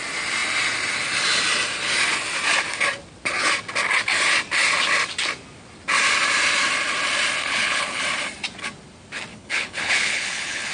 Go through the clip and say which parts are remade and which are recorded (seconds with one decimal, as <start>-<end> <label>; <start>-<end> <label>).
0.0-7.4 recorded; 7.4-8.0 remade; 8.0-9.3 recorded; 9.3-10.7 remade